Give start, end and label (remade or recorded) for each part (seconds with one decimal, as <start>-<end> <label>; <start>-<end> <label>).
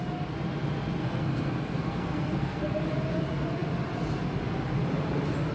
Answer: 0.0-1.0 recorded; 1.0-2.8 remade; 2.8-5.5 recorded